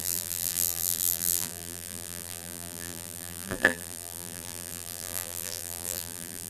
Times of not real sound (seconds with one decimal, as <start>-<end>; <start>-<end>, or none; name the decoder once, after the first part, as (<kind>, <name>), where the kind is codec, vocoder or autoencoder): 0.0-6.5 (vocoder, BigVGAN v2)